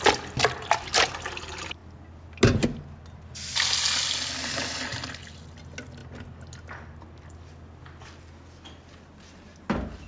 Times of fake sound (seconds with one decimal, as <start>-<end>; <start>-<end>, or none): none